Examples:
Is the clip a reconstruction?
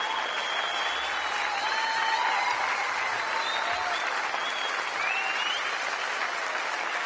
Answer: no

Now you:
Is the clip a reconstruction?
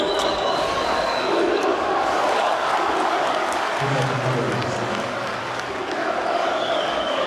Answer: yes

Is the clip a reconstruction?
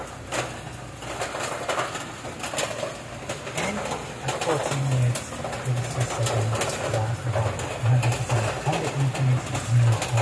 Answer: no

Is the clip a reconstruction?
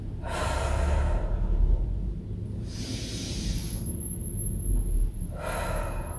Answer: no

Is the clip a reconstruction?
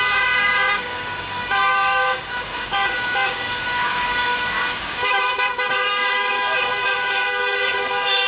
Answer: yes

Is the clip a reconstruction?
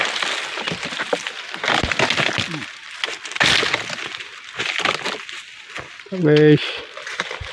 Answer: no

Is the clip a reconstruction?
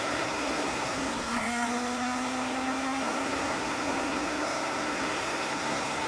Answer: yes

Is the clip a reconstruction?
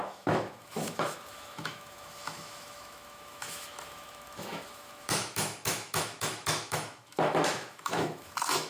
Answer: yes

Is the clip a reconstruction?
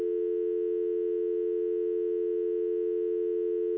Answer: no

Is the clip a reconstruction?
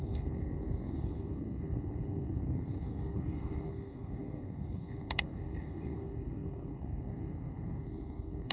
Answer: yes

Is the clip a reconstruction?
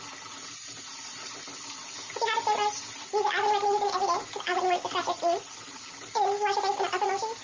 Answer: no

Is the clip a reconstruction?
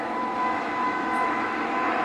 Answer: yes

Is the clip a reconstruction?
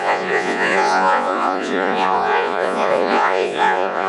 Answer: yes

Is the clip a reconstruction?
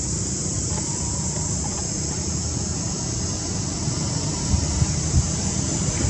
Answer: no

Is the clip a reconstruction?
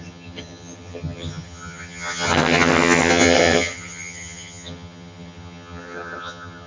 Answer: yes